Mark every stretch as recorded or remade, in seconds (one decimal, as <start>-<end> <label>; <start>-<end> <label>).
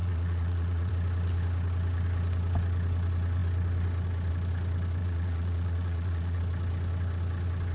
0.0-0.9 remade; 0.9-5.0 recorded; 5.0-6.4 remade; 6.4-7.7 recorded